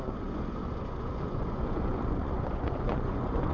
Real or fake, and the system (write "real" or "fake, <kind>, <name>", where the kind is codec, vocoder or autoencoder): fake, vocoder, Vocos